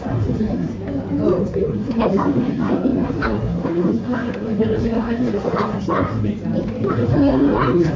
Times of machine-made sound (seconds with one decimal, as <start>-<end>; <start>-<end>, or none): 0.0-0.7; 1.4-6.3; 6.9-8.0